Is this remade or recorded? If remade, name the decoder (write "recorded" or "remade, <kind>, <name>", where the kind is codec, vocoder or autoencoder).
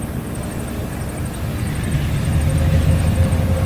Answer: recorded